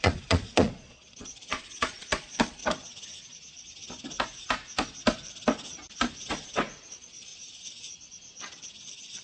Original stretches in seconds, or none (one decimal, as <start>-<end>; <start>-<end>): 2.6-6.8; 7.3-9.2